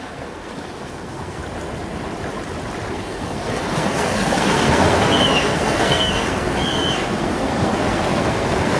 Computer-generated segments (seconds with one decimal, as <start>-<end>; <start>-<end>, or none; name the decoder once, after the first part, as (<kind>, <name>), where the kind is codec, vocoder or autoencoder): 0.0-1.4 (codec, SNAC); 2.9-8.8